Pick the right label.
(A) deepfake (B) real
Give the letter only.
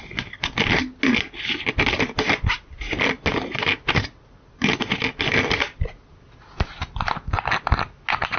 B